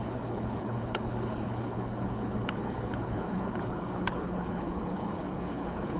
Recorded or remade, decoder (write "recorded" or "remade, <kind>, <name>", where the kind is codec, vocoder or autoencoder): remade, codec, HILCodec